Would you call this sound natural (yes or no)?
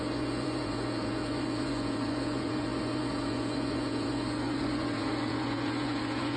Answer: no